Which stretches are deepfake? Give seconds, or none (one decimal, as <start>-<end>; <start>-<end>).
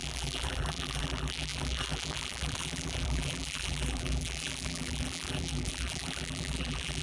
0.0-7.0